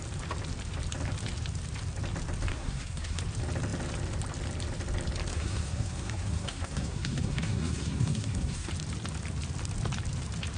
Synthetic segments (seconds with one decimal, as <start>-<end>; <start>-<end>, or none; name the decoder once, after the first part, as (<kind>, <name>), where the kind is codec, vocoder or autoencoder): 2.5-3.2 (codec, SNAC); 5.3-8.7